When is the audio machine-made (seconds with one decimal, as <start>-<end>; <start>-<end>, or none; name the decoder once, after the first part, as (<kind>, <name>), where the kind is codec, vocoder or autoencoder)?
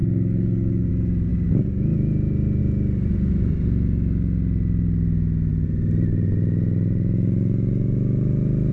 0.0-0.9 (codec, SNAC)